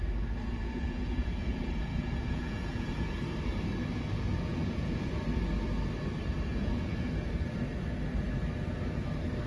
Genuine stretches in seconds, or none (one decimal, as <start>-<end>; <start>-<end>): 0.0-0.5; 3.1-4.5; 5.1-6.5; 7.1-9.5